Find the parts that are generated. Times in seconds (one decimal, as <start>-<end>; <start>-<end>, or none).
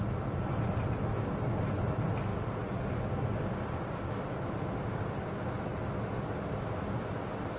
none